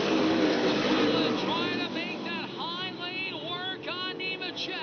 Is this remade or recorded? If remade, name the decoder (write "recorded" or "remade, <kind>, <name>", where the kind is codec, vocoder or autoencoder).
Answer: recorded